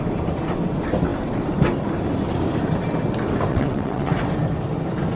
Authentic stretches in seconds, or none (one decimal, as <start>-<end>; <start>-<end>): 0.0-3.5; 4.1-5.2